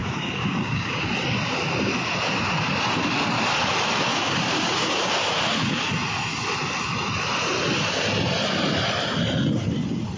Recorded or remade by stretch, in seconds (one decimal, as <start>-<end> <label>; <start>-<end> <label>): 0.0-1.1 remade; 1.1-4.1 recorded; 4.1-5.1 remade; 5.1-10.2 recorded